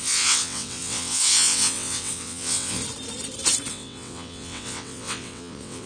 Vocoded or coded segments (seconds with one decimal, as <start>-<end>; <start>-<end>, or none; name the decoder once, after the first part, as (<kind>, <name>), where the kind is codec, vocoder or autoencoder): 0.0-2.8 (vocoder, WaveNeXt); 3.7-5.9